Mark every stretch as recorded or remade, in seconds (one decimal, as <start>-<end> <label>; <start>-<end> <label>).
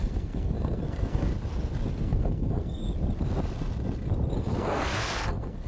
0.0-1.3 remade; 1.3-1.9 recorded; 1.9-2.8 remade; 2.8-4.4 recorded; 4.4-5.7 remade